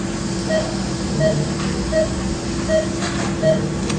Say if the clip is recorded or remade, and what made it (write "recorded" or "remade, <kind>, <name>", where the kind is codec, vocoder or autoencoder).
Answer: recorded